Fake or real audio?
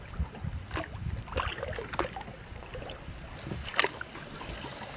real